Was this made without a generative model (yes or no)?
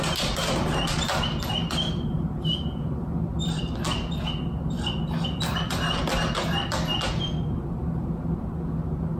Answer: yes